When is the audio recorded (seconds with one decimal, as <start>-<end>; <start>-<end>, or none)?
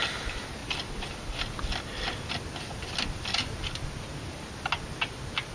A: 0.0-5.5